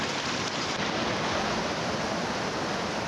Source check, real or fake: fake